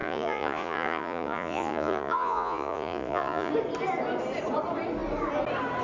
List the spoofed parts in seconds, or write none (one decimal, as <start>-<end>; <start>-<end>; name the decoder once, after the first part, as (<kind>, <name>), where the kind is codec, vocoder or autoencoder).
0.0-3.5 (vocoder, Vocos)